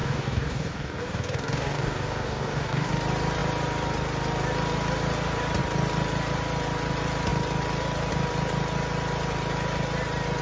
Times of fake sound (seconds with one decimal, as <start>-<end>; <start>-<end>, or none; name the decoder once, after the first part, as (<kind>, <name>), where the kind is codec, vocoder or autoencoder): 0.0-2.9 (codec, DAC)